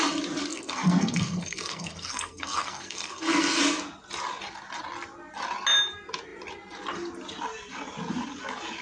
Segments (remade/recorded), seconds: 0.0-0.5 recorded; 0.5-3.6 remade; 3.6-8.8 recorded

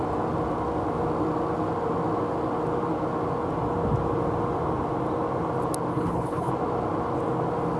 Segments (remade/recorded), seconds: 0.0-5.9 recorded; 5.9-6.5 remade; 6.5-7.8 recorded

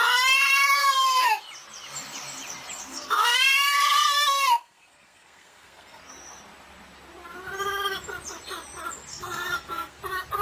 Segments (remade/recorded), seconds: 0.0-0.8 recorded; 0.8-1.3 remade; 1.3-2.9 recorded; 2.9-6.0 remade; 6.0-9.1 recorded; 9.1-10.0 remade; 10.0-10.4 recorded

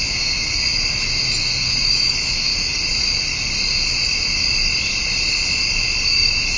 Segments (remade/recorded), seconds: 0.0-0.7 remade; 0.7-1.9 recorded; 1.9-2.5 remade; 2.5-6.1 recorded; 6.1-6.6 remade